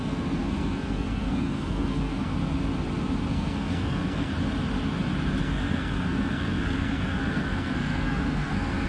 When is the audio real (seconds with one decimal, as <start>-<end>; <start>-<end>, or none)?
2.3-3.3; 4.3-5.4